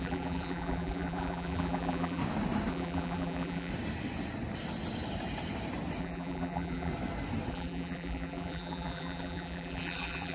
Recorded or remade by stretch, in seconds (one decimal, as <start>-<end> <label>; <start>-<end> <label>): 0.0-2.2 remade; 2.2-2.7 recorded; 2.7-3.7 remade; 3.7-6.0 recorded; 6.0-6.9 remade; 6.9-7.5 recorded; 7.5-10.3 remade